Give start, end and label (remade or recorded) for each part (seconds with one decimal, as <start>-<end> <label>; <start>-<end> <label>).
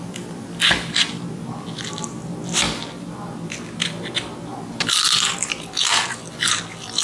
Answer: 0.0-7.0 recorded